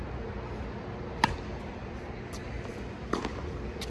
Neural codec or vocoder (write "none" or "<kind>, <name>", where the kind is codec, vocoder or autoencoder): none